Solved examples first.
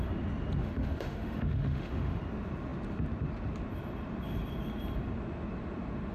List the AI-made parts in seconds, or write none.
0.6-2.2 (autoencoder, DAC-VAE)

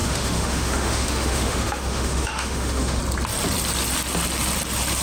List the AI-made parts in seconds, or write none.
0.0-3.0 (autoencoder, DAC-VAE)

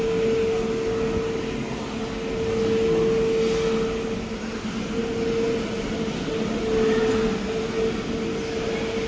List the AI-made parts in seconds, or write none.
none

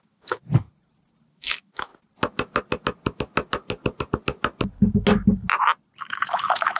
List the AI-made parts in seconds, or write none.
0.0-0.4 (autoencoder, DAC-VAE); 1.3-1.9; 6.0-6.8

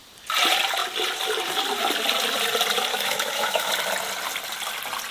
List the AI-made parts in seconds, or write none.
2.9-3.7 (autoencoder, DAC-VAE)

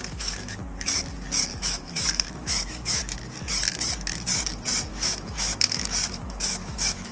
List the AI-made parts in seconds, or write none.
0.0-0.6 (autoencoder, DAC-VAE); 1.6-3.0; 4.9-7.1